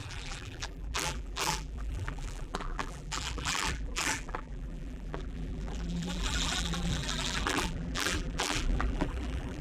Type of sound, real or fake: fake